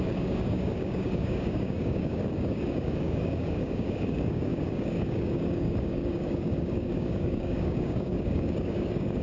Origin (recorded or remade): remade